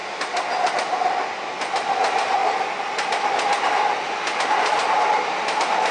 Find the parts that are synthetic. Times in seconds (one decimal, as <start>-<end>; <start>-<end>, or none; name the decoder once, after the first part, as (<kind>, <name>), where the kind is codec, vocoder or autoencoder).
none